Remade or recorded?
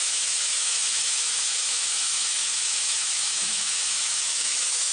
remade